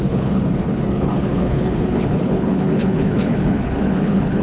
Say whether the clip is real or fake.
fake